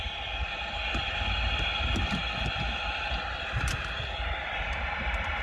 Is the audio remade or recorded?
recorded